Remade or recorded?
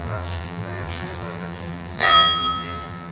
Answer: remade